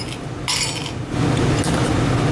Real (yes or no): yes